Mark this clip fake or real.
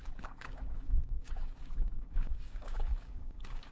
fake